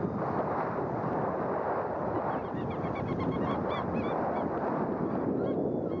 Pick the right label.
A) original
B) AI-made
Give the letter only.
A